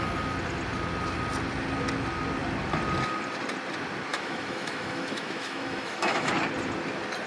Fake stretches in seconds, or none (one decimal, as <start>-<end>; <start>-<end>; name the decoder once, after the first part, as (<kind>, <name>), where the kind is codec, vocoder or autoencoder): 4.1-6.3 (autoencoder, DAC-VAE)